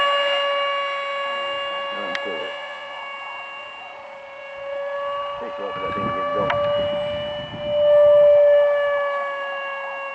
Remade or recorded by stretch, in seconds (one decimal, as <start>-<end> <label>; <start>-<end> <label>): 0.0-2.4 recorded; 2.4-3.0 remade; 3.0-10.1 recorded